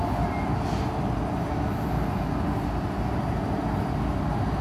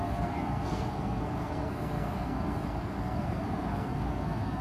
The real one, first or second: first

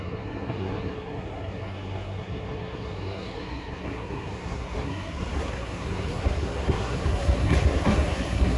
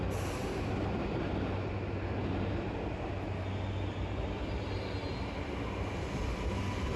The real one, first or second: second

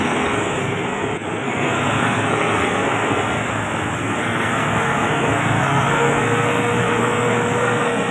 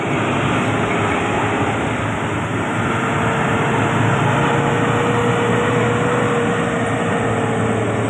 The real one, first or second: second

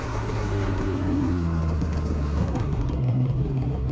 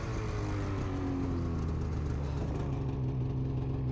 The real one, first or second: second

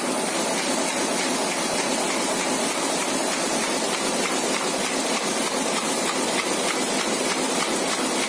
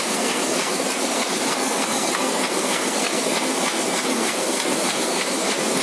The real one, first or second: first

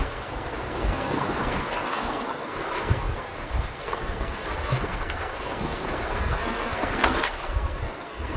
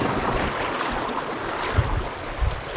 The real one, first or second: second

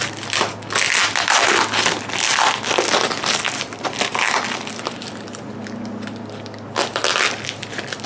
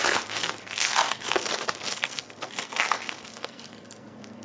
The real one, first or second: first